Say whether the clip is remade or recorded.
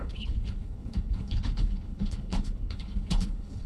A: remade